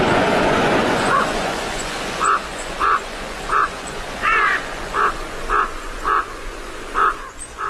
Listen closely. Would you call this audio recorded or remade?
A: remade